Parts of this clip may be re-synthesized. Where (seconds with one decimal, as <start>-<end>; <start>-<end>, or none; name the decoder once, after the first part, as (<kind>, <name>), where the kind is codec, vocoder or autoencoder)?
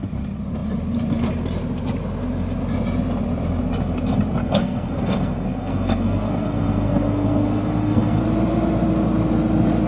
4.4-8.2 (codec, SNAC)